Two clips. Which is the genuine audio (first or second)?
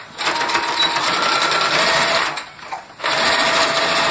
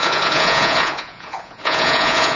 first